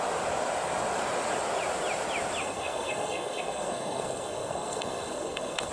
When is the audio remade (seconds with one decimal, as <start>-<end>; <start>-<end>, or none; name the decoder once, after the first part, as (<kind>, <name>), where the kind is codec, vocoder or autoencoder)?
2.4-5.7 (codec, SNAC)